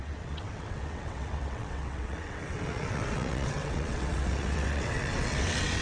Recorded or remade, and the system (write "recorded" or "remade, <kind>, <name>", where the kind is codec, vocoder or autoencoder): remade, vocoder, WaveNeXt